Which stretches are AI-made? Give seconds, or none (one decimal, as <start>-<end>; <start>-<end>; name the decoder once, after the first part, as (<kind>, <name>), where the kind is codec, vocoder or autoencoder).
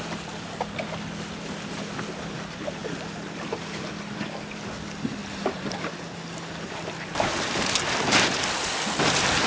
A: none